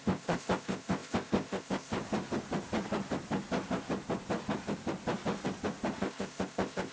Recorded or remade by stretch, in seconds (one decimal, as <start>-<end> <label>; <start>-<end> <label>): 0.0-2.0 remade; 2.0-6.0 recorded; 6.0-6.9 remade